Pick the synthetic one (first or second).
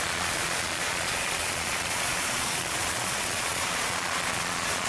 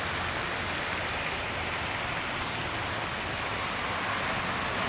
first